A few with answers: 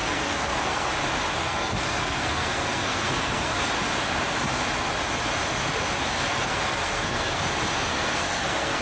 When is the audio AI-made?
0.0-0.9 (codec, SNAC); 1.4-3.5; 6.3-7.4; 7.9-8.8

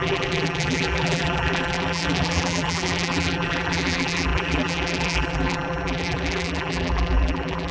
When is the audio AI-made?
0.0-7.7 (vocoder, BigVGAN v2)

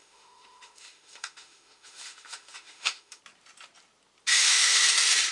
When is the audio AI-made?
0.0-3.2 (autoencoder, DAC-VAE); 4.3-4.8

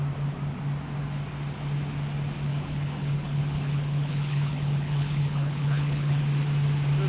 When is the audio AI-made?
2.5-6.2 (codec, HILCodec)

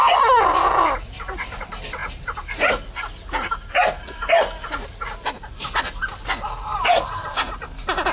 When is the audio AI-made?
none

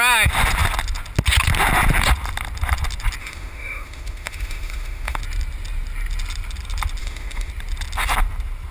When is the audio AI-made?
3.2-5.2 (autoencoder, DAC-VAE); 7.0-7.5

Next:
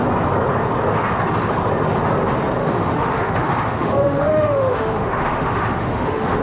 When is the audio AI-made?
2.6-6.4 (autoencoder, DAC-VAE)

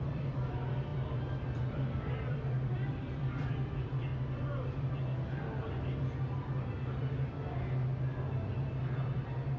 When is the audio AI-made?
0.0-4.1 (vocoder, BigVGAN v2); 6.7-7.9